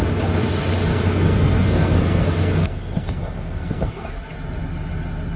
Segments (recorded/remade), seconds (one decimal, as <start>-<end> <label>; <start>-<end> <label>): 0.0-0.9 recorded; 0.9-4.1 remade; 4.1-5.4 recorded